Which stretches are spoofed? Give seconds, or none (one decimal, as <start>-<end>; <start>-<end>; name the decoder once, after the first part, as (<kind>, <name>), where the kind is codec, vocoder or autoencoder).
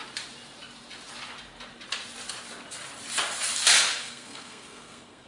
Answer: 4.0-5.3 (codec, SNAC)